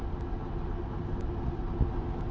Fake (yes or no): no